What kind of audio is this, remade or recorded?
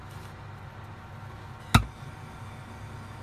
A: recorded